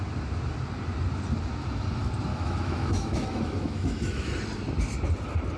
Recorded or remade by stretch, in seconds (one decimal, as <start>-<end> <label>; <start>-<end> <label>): 0.0-2.3 recorded; 2.3-4.3 remade; 4.3-5.6 recorded